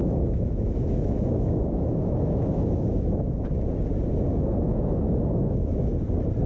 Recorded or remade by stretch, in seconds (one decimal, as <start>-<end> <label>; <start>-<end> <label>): 0.0-3.4 remade; 3.4-4.3 recorded; 4.3-5.9 remade; 5.9-6.5 recorded